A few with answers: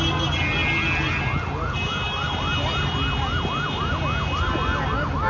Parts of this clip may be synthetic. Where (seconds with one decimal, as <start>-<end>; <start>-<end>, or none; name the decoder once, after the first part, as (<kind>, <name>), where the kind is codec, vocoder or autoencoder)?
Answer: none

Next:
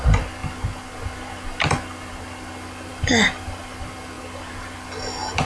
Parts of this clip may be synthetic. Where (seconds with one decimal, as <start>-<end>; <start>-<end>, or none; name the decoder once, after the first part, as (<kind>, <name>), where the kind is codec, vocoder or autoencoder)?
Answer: none

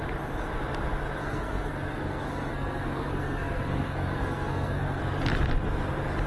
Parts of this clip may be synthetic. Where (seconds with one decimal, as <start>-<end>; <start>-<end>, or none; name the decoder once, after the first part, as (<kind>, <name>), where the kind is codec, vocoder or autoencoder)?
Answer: 1.2-5.0 (codec, SNAC)

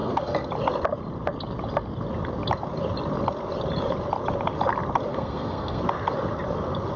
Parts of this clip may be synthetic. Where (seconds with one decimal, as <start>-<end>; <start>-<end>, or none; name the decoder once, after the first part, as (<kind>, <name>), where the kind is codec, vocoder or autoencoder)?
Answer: 0.0-0.5 (codec, SNAC); 5.1-5.8